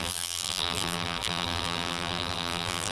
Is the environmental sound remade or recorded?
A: remade